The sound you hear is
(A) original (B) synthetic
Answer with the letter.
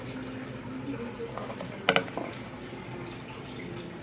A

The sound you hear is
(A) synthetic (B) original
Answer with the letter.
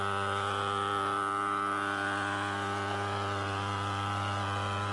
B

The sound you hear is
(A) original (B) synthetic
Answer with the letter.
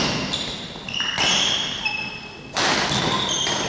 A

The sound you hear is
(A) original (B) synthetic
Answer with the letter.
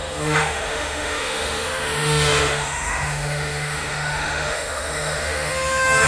B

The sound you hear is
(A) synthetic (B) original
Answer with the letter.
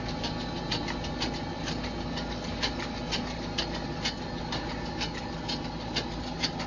B